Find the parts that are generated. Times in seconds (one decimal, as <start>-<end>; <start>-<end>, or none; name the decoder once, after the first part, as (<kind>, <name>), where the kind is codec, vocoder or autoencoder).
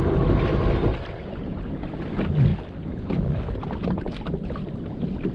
none